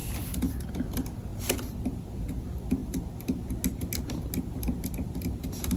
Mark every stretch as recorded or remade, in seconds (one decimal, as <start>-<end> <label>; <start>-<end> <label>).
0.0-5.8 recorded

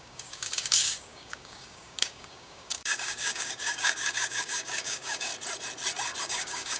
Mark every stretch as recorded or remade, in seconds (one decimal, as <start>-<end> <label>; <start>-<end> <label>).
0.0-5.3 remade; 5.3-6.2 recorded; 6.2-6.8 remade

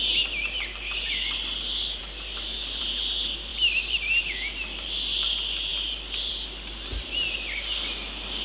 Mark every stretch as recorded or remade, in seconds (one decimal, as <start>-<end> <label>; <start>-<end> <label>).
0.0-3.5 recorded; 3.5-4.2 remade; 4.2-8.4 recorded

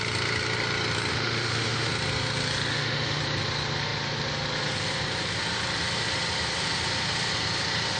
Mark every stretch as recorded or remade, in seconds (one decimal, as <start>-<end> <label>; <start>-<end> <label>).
0.0-1.1 recorded; 1.1-1.9 remade; 1.9-2.7 recorded; 2.7-3.2 remade; 3.2-8.0 recorded

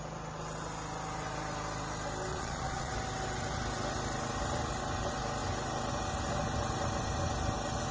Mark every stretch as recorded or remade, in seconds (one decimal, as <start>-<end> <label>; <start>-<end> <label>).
0.0-2.3 recorded; 2.3-2.9 remade; 2.9-7.9 recorded

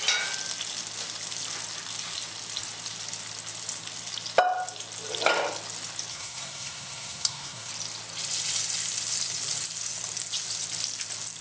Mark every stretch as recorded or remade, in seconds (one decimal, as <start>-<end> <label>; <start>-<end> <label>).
0.0-6.1 recorded; 6.1-7.7 remade; 7.7-11.4 recorded